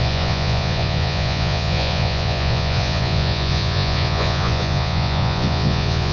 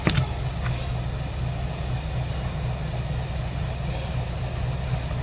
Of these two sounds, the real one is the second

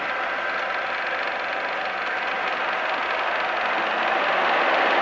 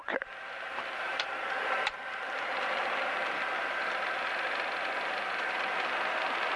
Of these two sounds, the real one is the first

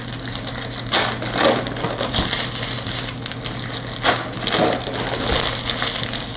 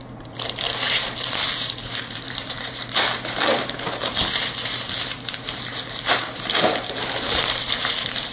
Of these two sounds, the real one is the first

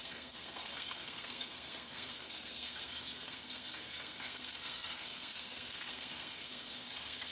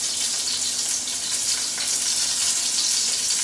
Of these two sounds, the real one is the second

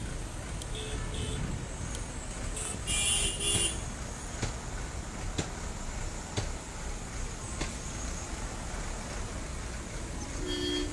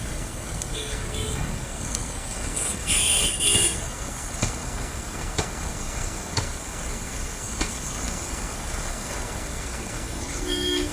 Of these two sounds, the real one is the first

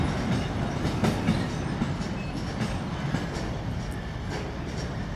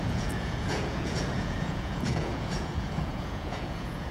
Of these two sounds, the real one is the first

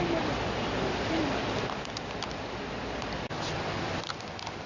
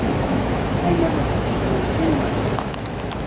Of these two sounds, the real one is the first